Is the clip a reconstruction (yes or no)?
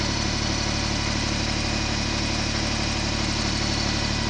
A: no